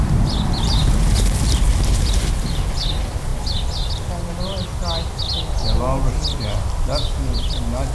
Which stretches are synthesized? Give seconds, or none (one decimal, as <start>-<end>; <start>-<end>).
none